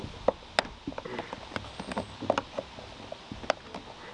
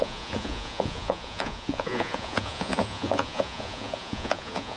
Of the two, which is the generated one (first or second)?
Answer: second